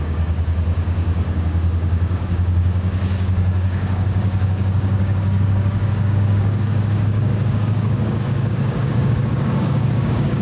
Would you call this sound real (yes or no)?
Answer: no